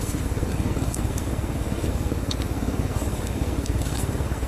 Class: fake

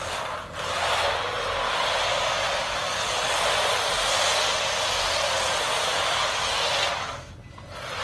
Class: real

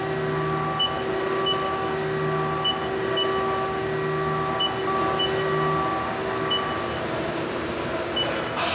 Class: real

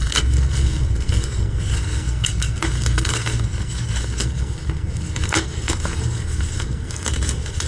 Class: fake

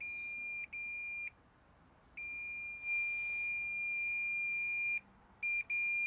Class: real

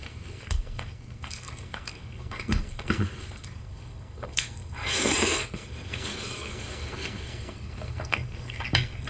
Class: fake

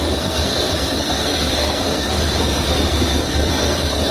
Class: fake